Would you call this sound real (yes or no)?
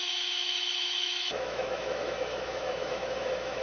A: no